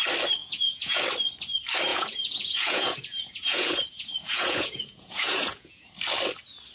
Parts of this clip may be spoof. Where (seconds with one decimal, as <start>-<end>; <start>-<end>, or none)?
0.4-1.0; 1.9-5.9